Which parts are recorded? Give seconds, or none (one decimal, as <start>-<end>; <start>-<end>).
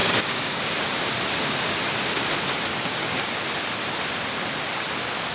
0.6-2.7; 3.3-5.3